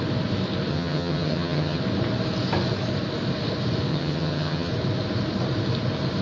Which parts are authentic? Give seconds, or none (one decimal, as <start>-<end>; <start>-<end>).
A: 0.0-0.7; 1.8-3.9; 4.7-6.2